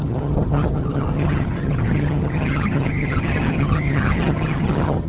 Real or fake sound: fake